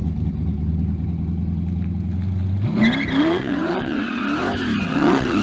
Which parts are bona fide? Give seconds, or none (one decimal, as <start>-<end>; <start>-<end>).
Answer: 0.0-3.2; 4.2-4.8